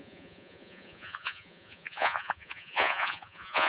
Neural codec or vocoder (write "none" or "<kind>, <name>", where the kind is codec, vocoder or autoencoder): vocoder, Vocos